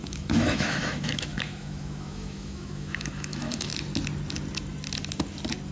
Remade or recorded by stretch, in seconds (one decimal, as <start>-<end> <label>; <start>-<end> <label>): 0.0-3.7 remade; 3.7-5.7 recorded